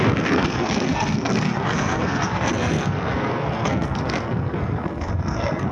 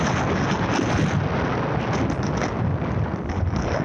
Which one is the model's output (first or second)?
first